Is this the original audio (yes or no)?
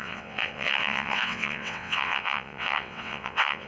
no